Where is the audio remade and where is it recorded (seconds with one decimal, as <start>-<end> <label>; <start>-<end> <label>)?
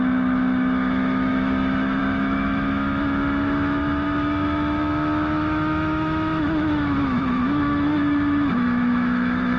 0.0-9.6 remade